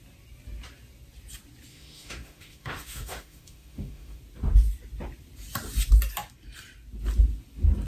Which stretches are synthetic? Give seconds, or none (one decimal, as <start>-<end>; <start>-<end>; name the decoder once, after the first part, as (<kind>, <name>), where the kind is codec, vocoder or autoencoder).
1.7-4.2 (autoencoder, DAC-VAE)